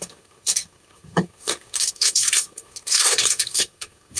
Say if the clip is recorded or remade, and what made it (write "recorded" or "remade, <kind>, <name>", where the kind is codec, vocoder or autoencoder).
remade, codec, SNAC